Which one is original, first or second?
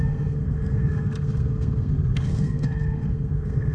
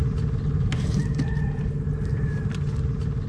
second